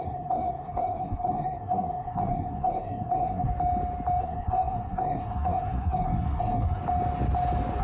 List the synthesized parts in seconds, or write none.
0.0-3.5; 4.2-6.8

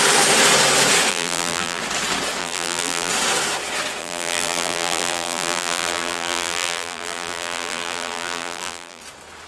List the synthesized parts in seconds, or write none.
1.1-1.8; 2.4-3.1; 4.0-9.0

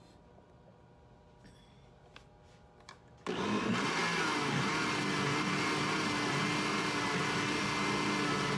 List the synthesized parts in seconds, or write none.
none

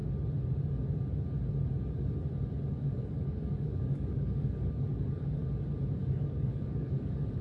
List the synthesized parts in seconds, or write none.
2.7-5.4; 6.0-7.4

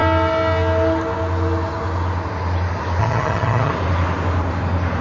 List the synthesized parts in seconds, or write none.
3.0-3.7